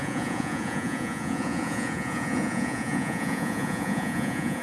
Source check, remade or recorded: remade